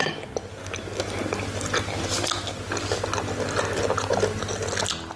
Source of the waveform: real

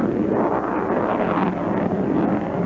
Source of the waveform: real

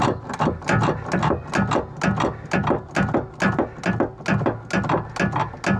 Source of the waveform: real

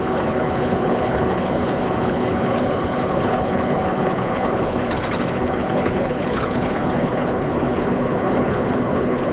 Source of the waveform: fake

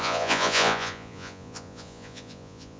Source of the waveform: fake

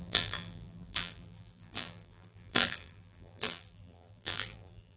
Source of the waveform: fake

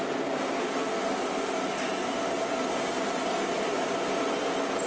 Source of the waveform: real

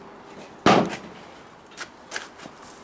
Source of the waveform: real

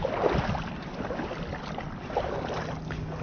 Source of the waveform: real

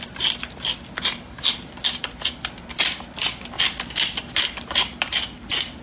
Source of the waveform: real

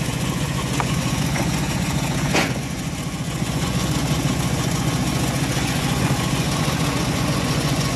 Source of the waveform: fake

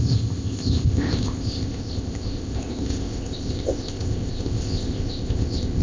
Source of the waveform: fake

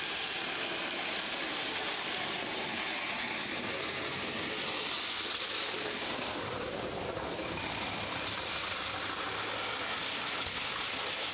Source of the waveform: real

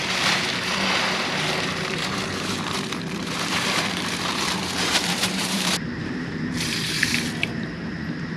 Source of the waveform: fake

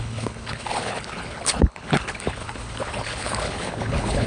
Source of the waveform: fake